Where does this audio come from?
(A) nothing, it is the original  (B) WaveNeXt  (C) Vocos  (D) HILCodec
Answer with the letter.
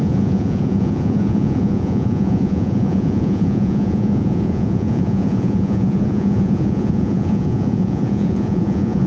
C